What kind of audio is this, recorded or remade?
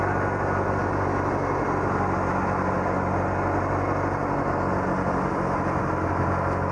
recorded